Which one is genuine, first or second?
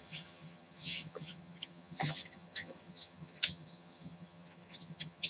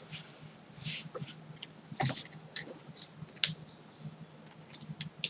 second